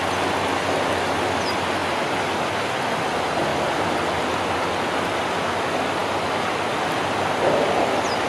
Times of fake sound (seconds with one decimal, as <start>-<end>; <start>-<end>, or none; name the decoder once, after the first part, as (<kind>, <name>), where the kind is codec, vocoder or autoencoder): none